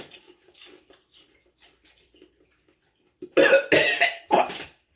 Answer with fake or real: real